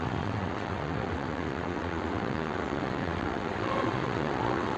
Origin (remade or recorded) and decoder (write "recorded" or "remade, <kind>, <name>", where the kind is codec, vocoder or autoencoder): remade, vocoder, WaveNeXt